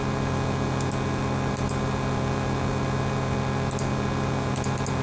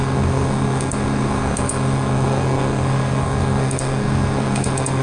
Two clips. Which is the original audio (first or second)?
first